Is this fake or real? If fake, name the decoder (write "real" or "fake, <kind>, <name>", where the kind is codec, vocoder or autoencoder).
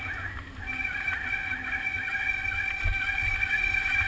real